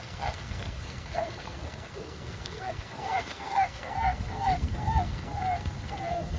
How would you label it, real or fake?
fake